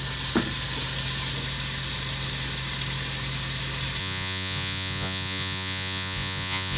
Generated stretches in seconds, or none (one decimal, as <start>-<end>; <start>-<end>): 4.0-6.8